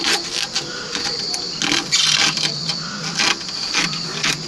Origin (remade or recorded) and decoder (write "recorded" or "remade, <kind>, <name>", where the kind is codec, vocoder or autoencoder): recorded